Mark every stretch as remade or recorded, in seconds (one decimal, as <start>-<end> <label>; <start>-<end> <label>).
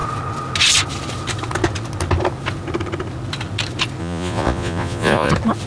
0.0-4.0 recorded; 4.0-5.3 remade; 5.3-5.7 recorded